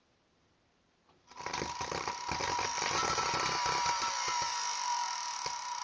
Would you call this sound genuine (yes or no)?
yes